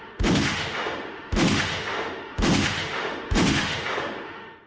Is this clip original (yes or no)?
no